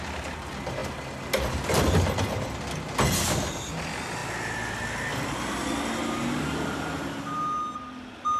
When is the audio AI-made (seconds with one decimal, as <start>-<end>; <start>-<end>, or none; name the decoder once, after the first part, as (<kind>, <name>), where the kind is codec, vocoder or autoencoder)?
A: none